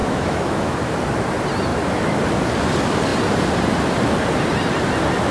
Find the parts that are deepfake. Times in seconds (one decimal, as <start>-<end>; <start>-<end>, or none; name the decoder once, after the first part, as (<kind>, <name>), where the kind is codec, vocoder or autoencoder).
0.0-0.9 (autoencoder, DAC-VAE); 1.7-2.2